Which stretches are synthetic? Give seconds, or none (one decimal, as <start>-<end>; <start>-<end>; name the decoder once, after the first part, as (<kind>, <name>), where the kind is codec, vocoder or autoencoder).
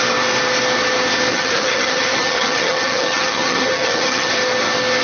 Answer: 1.3-4.3 (vocoder, HiFi-GAN)